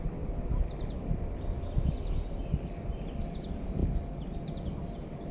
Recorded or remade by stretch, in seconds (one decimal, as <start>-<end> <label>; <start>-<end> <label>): 0.0-5.3 recorded